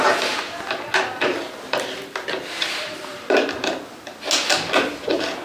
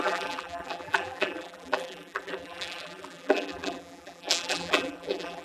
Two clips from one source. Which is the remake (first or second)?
second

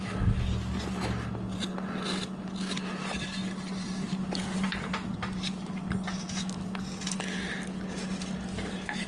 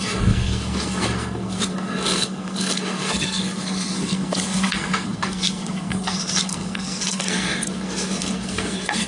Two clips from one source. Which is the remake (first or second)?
second